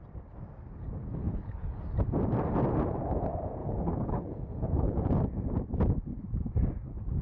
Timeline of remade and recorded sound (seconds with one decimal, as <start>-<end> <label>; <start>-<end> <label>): 0.0-1.2 recorded; 1.2-1.8 remade; 1.8-3.6 recorded; 3.6-5.2 remade; 5.2-7.2 recorded